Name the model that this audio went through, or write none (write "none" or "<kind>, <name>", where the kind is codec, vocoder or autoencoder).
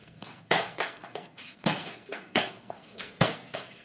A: codec, SNAC